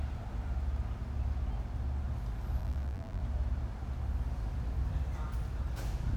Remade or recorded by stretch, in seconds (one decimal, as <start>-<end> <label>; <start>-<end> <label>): 0.0-2.6 recorded; 2.6-3.2 remade; 3.2-6.2 recorded